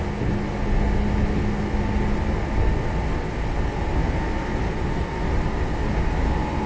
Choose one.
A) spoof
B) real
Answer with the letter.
B